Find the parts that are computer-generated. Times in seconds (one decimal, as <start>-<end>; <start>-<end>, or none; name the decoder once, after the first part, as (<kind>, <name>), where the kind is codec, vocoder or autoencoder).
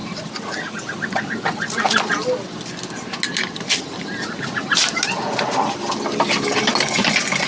none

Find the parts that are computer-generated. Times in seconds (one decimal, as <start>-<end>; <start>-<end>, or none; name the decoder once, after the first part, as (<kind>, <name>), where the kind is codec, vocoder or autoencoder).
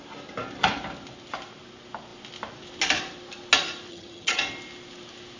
3.9-4.4 (vocoder, HiFi-GAN)